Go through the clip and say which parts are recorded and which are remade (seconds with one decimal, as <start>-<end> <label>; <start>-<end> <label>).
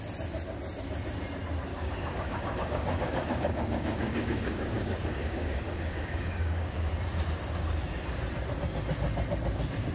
0.0-1.7 recorded; 1.7-6.9 remade; 6.9-9.9 recorded